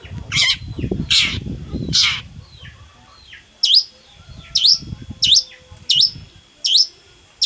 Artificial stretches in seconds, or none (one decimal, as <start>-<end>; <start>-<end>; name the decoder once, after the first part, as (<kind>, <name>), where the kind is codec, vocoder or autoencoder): 0.8-2.3 (vocoder, BigVGAN v2)